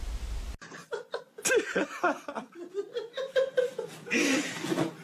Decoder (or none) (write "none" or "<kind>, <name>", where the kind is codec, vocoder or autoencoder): none